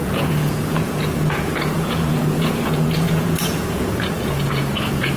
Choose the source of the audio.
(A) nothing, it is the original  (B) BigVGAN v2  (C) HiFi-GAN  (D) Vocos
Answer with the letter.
D